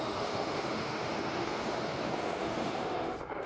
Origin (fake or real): fake